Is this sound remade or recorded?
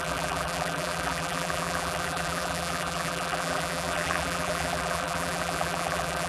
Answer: remade